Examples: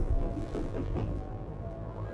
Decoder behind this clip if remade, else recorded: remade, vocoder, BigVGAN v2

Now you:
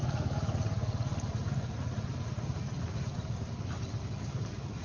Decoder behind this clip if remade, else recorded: recorded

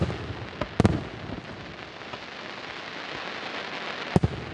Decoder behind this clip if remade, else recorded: recorded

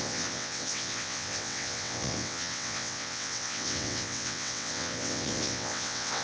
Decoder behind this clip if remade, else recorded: remade, vocoder, WaveNeXt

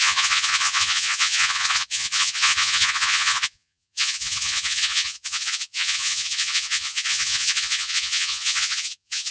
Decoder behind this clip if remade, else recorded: remade, vocoder, Vocos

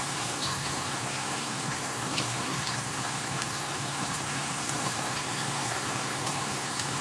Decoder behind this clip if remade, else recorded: remade, codec, SNAC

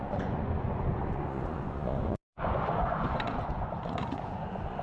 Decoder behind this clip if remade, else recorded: remade, vocoder, Vocos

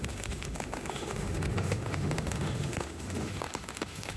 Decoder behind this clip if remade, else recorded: remade, autoencoder, DAC-VAE